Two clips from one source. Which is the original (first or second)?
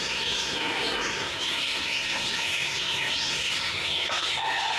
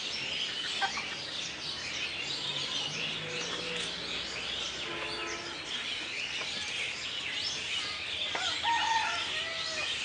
second